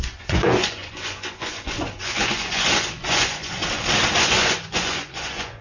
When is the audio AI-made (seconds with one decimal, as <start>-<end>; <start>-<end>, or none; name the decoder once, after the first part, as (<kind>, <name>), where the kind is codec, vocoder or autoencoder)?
0.0-3.6 (vocoder, Vocos); 4.2-5.6